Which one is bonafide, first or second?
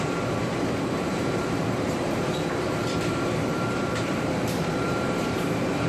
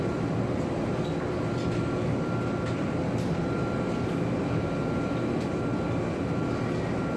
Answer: second